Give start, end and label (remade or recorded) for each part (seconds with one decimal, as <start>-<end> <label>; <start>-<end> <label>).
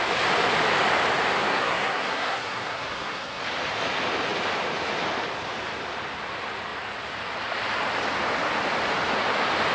0.0-1.5 recorded; 1.5-3.4 remade; 3.4-9.7 recorded